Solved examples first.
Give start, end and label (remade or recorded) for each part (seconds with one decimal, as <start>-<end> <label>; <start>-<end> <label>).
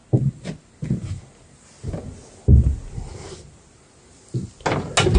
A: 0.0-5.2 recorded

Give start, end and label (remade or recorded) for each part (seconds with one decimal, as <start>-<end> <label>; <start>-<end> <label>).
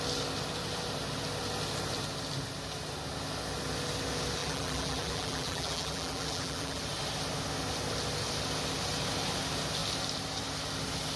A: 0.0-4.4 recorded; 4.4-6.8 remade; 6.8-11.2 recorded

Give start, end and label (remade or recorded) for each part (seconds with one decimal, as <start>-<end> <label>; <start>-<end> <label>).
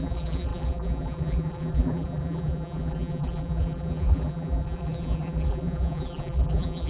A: 0.0-6.9 remade